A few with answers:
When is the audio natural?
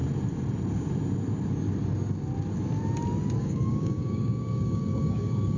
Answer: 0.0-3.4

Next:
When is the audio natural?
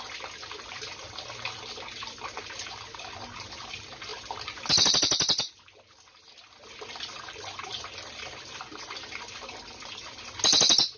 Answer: 0.0-11.0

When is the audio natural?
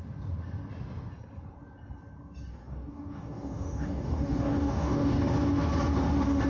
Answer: 0.0-2.5; 5.2-6.5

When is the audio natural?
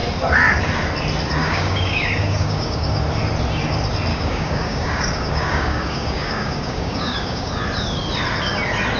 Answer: 0.0-1.4; 3.0-4.1; 7.5-9.0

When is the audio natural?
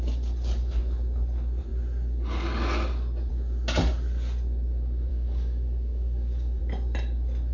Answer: 0.0-5.1; 6.6-7.5